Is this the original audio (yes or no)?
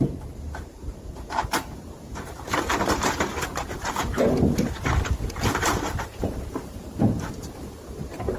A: no